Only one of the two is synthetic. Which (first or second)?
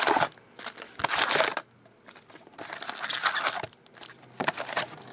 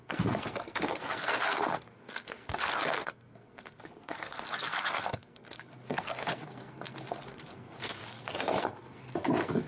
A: second